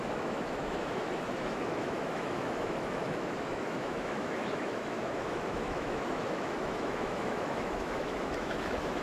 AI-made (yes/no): yes